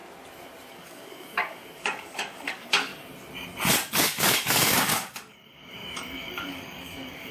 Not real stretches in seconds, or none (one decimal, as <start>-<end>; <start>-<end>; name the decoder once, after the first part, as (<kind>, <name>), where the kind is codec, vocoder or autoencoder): 0.7-2.9 (codec, DAC); 3.9-7.3